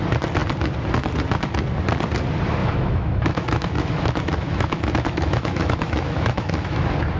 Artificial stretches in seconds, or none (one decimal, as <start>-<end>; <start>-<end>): 2.6-6.8